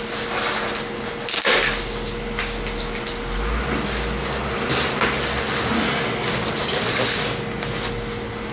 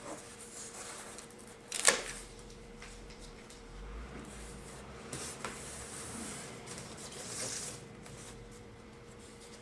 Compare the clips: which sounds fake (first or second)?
second